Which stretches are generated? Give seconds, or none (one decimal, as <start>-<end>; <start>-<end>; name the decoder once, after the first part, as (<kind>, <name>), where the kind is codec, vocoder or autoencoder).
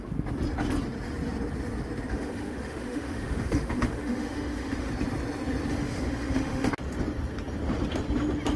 2.1-4.9 (autoencoder, DAC-VAE); 5.7-6.7